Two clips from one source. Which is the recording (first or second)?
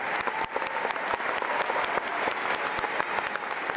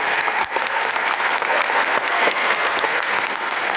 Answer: first